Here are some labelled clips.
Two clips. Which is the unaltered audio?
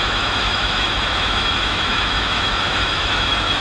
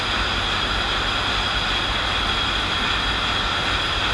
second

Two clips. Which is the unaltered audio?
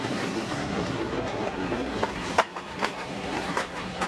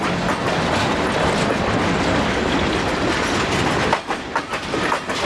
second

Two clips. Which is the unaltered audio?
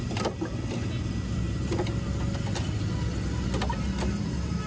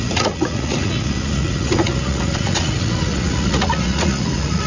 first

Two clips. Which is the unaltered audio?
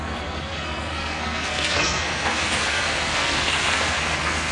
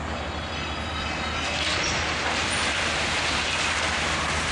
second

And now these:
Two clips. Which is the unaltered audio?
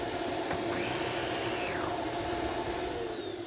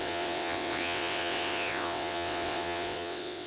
first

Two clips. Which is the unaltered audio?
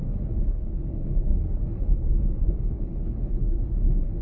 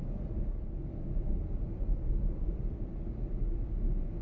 second